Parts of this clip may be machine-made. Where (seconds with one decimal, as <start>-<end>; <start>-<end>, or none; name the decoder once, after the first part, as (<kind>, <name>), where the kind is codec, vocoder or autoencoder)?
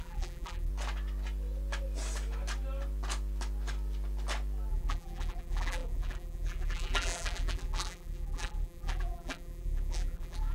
0.0-0.7 (vocoder, BigVGAN v2); 4.7-10.5